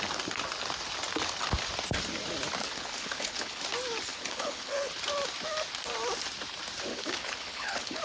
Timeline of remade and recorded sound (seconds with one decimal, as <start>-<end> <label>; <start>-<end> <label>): 0.0-2.6 recorded; 2.6-3.6 remade; 3.6-4.1 recorded; 4.1-4.9 remade; 4.9-6.9 recorded; 6.9-8.0 remade